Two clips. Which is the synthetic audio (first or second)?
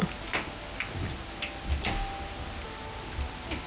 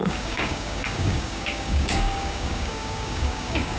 second